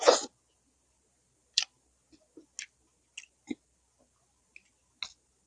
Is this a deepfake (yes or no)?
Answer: no